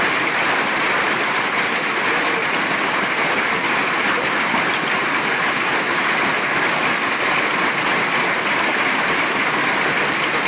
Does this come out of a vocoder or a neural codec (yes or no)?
no